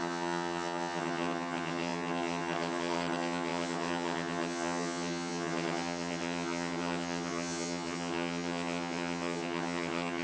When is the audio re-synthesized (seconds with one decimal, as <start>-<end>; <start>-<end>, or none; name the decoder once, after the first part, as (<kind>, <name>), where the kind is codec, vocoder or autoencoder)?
0.0-10.2 (vocoder, HiFi-GAN)